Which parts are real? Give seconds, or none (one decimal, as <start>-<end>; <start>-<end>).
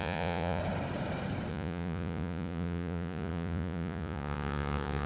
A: 0.6-1.5